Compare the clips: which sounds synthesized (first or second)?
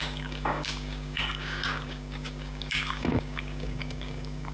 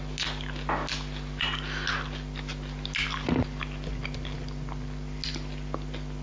first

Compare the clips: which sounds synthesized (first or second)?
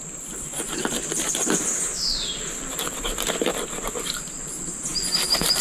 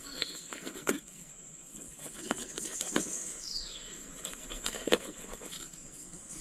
second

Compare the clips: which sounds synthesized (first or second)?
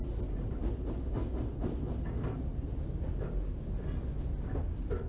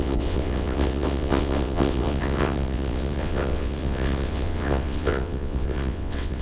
second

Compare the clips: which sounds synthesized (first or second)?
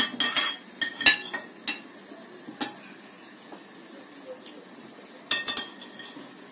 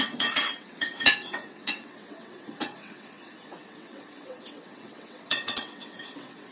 second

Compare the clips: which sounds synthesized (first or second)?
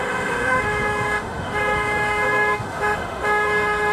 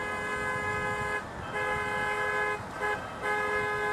first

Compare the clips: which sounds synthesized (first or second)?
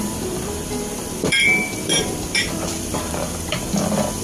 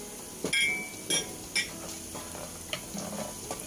first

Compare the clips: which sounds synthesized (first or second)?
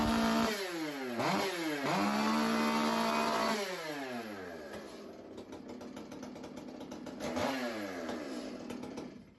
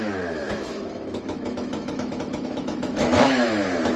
second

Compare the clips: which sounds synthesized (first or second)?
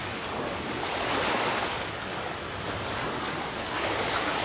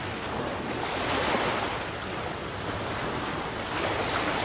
first